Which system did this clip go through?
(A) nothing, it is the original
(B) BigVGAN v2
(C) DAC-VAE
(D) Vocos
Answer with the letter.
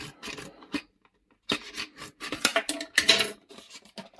A